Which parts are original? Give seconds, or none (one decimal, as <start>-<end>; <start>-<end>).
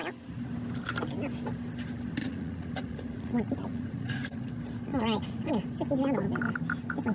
0.0-2.2; 4.5-4.9; 5.5-7.1